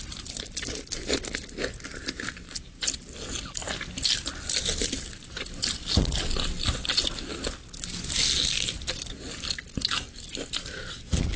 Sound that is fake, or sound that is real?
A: real